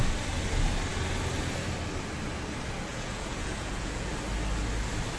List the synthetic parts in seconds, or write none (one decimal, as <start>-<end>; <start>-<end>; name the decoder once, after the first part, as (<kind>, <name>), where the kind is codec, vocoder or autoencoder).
2.9-4.1 (vocoder, Vocos)